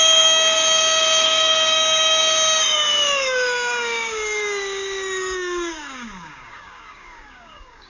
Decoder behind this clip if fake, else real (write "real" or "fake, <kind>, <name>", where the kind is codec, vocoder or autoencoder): fake, codec, DAC